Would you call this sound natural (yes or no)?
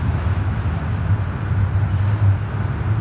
yes